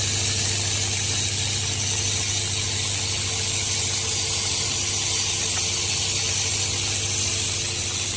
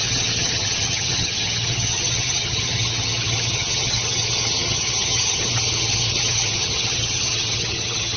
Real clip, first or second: first